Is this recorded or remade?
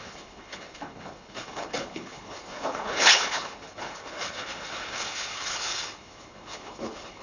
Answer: remade